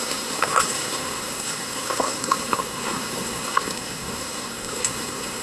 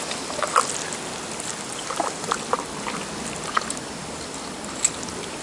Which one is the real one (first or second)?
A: second